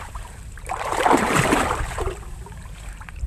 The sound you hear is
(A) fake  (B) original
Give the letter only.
A